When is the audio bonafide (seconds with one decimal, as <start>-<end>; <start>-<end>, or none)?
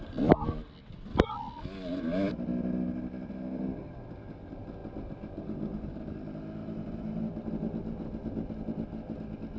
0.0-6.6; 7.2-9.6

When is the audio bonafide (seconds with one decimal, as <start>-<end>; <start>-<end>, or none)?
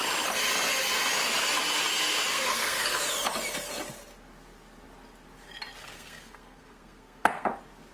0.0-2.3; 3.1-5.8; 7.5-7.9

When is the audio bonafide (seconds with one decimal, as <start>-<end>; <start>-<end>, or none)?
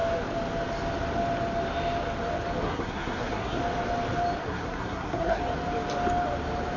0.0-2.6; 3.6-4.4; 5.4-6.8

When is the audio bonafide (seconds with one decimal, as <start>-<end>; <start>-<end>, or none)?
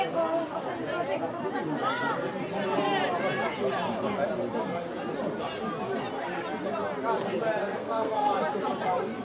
0.0-7.6; 8.3-9.2